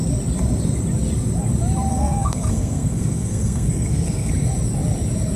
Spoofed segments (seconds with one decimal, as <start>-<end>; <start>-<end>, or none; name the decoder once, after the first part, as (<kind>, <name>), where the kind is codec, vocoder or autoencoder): 1.9-4.3 (codec, SNAC)